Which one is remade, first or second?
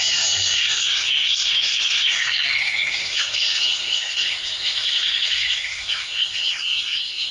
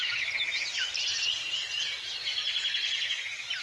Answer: first